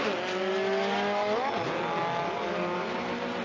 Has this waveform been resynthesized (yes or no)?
no